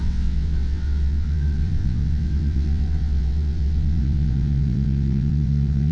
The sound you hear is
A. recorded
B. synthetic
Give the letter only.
B